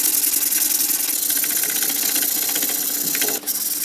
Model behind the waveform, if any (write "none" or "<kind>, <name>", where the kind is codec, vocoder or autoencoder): none